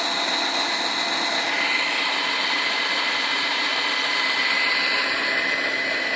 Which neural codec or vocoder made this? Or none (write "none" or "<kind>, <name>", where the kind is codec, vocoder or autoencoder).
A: vocoder, BigVGAN v2